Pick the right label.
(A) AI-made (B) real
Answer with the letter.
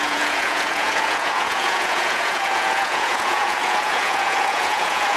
A